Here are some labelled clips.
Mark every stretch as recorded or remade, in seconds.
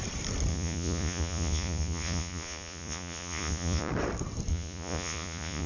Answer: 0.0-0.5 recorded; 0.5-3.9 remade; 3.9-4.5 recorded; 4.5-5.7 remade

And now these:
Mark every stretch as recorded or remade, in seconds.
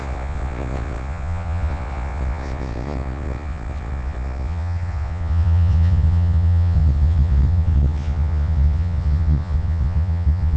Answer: 0.0-10.6 remade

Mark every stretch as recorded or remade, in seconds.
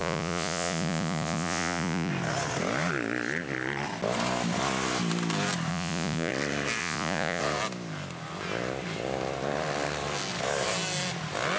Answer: 0.0-2.1 remade; 2.1-5.7 recorded; 5.7-6.3 remade; 6.3-6.8 recorded; 6.8-7.4 remade; 7.4-11.6 recorded